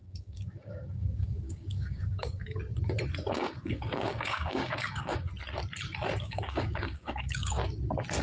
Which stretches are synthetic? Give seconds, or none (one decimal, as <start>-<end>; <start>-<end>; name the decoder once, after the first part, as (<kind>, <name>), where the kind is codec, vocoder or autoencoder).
0.0-2.6 (codec, DAC); 3.3-5.3; 6.2-7.6